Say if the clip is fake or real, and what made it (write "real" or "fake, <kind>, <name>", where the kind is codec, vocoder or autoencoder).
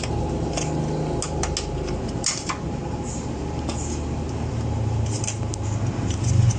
real